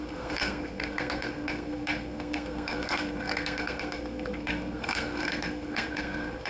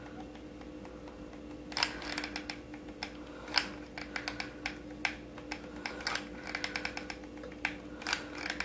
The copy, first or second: first